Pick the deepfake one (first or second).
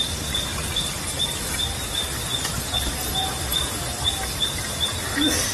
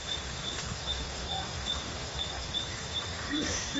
second